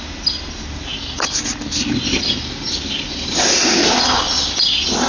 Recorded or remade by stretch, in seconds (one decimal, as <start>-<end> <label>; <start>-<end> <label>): 0.0-5.1 recorded

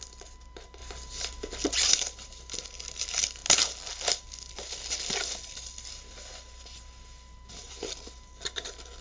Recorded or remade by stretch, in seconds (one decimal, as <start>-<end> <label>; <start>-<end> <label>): 0.0-0.8 remade; 0.8-1.9 recorded; 1.9-3.4 remade; 3.4-7.7 recorded; 7.7-9.0 remade